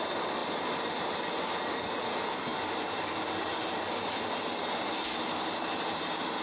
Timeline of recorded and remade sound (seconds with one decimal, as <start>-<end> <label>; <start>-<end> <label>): 0.0-6.4 recorded